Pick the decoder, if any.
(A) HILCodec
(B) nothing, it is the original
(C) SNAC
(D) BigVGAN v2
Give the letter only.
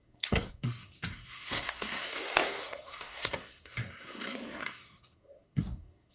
C